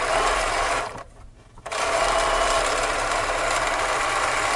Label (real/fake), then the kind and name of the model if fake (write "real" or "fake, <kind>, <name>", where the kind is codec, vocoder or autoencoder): fake, vocoder, BigVGAN v2